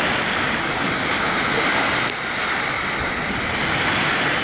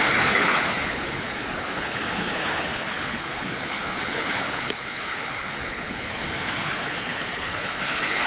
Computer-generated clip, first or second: second